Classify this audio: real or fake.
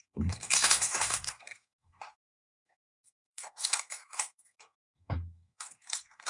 fake